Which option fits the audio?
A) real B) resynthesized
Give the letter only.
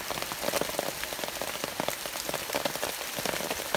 A